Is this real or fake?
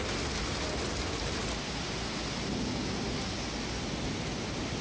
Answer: real